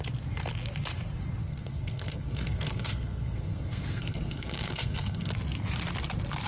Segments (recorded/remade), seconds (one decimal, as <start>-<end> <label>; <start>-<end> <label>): 0.0-1.4 recorded; 1.4-5.3 remade; 5.3-6.5 recorded